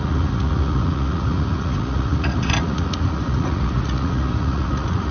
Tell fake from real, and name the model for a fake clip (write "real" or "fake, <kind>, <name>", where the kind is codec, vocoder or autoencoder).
fake, vocoder, Vocos